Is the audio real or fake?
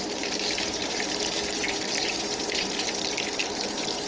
fake